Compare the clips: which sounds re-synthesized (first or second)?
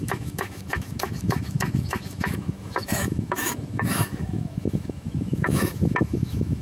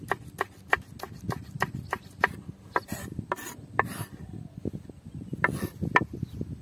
first